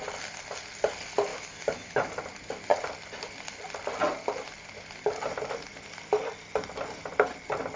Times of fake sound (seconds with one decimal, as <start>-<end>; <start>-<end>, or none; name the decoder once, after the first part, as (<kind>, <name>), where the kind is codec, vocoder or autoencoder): 1.3-2.1 (autoencoder, DAC-VAE)

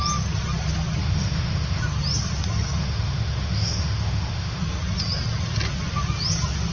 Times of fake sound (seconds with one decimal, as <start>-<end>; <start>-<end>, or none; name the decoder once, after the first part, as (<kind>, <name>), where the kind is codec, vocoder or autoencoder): 1.0-1.8 (autoencoder, DAC-VAE); 2.8-4.6

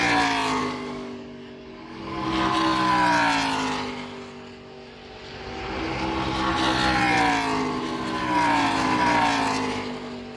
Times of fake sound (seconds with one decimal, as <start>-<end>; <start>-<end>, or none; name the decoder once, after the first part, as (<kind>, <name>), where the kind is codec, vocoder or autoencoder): 0.6-2.0 (codec, DAC)